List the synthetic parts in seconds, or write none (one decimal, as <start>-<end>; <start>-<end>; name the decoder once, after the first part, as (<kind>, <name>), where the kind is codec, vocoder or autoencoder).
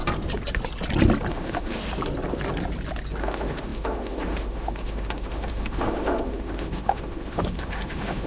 1.3-1.8 (autoencoder, DAC-VAE); 3.2-8.3